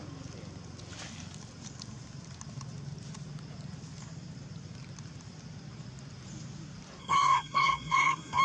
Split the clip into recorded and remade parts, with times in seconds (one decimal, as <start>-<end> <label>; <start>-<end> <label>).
0.0-7.0 recorded; 7.0-8.4 remade